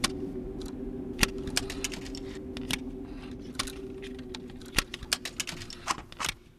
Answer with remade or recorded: recorded